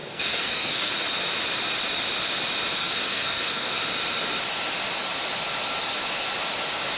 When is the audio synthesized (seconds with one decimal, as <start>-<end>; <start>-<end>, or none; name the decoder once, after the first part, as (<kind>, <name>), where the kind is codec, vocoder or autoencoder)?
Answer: 0.0-0.9 (codec, SNAC); 2.8-3.8